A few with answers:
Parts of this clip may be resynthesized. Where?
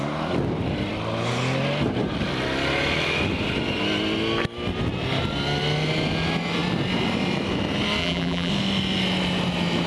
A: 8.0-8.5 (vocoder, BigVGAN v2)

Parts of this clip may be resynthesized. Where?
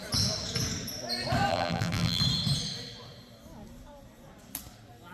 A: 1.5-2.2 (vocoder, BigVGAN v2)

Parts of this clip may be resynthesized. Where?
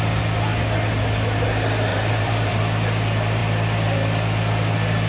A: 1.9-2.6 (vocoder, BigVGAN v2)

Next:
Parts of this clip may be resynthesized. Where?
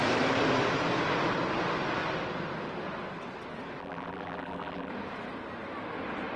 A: 3.8-4.9 (vocoder, BigVGAN v2)